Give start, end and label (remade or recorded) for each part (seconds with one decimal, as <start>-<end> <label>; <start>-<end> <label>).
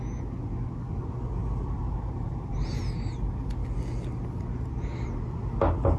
0.0-1.4 recorded; 1.4-2.6 remade; 2.6-6.0 recorded